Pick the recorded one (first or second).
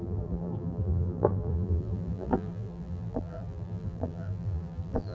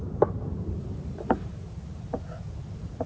second